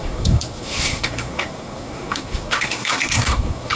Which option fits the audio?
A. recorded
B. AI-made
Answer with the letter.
B